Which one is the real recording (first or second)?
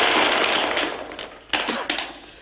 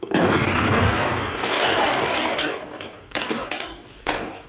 first